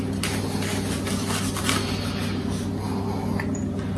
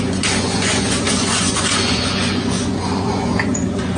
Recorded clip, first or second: first